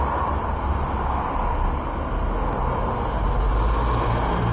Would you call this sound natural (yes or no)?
yes